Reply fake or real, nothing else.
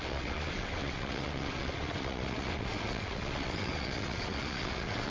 fake